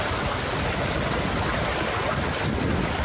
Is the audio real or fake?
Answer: real